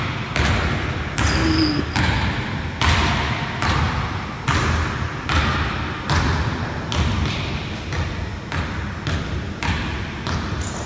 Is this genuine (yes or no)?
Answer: yes